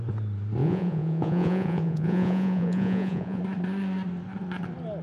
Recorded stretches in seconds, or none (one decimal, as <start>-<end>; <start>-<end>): 0.0-0.6; 3.4-5.0